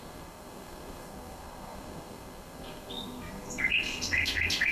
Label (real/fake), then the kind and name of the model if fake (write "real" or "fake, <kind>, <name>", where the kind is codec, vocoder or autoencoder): fake, codec, SNAC